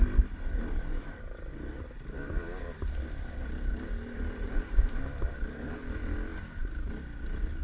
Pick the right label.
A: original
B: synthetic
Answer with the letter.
A